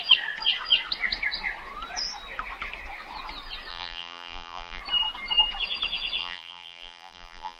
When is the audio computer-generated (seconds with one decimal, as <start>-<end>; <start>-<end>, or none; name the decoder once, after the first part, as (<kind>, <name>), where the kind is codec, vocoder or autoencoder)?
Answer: 3.7-4.8 (vocoder, BigVGAN v2); 6.2-7.6